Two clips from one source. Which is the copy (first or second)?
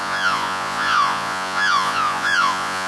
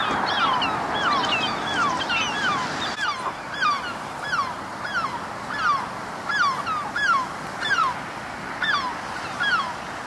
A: first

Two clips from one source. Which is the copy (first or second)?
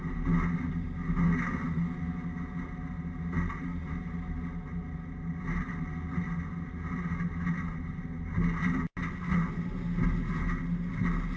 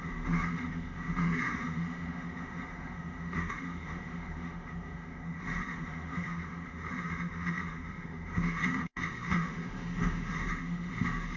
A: second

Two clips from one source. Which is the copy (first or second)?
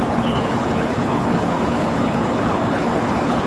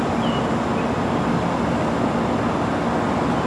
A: first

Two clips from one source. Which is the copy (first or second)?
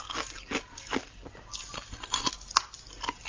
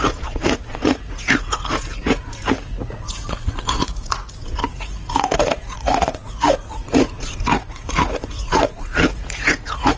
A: second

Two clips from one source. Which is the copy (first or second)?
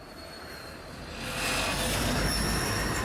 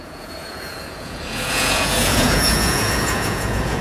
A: second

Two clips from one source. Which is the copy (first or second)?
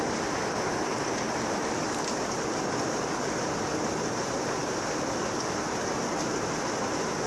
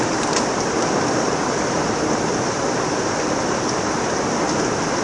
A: second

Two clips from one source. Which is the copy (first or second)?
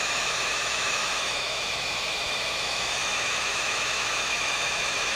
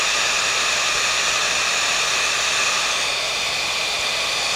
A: first